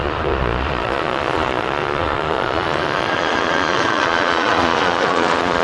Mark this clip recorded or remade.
remade